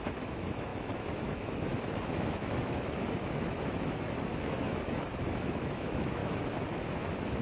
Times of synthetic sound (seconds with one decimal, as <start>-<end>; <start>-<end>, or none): 0.0-7.4